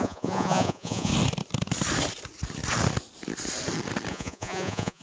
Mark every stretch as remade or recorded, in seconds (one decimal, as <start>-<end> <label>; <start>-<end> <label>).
0.0-1.1 remade; 1.1-4.1 recorded; 4.1-5.0 remade